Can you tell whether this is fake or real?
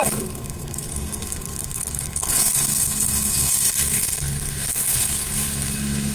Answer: fake